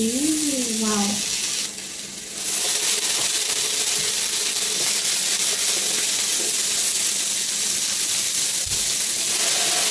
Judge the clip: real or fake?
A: real